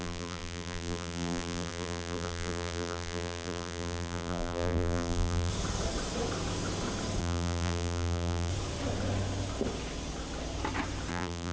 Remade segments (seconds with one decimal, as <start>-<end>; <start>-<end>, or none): 0.0-5.5; 7.2-8.5; 11.1-11.5